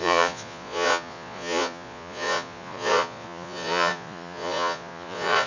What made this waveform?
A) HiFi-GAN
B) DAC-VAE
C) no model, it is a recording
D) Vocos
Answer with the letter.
D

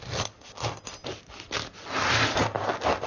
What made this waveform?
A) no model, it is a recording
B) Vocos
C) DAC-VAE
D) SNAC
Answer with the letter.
A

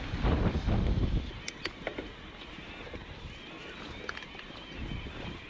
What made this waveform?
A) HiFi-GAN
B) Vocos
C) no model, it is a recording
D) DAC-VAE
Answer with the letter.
C